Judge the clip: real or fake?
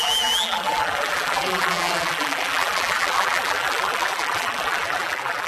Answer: fake